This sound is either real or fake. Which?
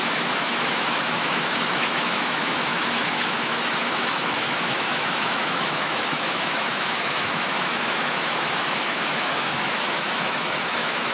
fake